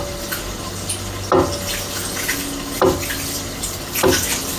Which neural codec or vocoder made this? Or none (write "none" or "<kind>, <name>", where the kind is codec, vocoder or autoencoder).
none